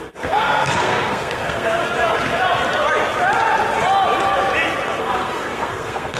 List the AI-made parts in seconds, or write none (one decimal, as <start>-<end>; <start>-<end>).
0.0-1.8; 5.0-6.2